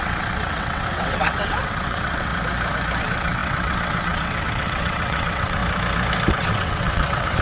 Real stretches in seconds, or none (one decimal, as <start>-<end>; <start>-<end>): 2.3-3.0; 5.6-6.3